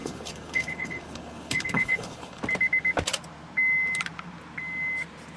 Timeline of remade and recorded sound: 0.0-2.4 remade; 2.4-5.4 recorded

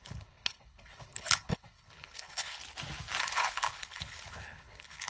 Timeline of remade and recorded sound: 0.0-2.6 remade; 2.6-3.2 recorded; 3.2-5.1 remade

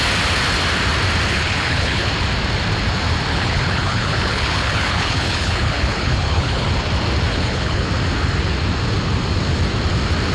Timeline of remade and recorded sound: 0.0-1.3 recorded; 1.3-2.1 remade; 2.1-3.3 recorded; 3.3-6.7 remade; 6.7-7.3 recorded; 7.3-7.9 remade; 7.9-10.3 recorded